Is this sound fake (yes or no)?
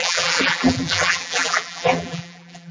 yes